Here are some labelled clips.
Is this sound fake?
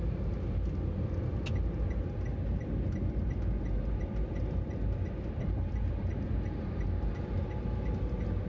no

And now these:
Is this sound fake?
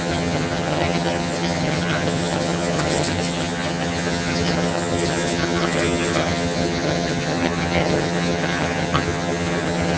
yes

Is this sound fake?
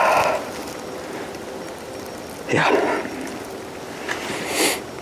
no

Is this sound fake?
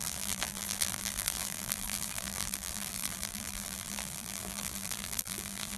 yes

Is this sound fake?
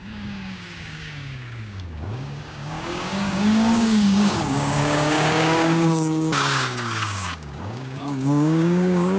yes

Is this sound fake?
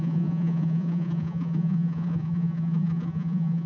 yes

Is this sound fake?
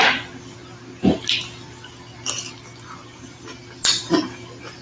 no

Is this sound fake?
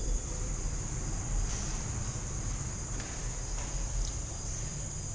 yes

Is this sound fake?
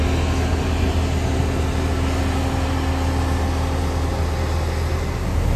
no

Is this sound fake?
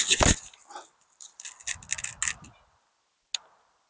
no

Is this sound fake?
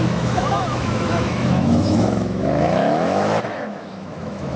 yes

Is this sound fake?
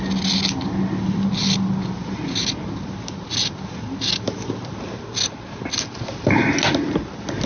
no